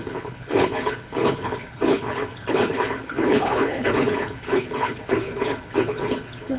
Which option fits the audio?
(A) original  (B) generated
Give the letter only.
B